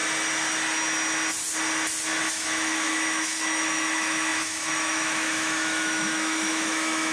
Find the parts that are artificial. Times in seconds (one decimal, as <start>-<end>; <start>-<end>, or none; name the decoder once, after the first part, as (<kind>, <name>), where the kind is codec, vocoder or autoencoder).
2.2-7.1 (autoencoder, DAC-VAE)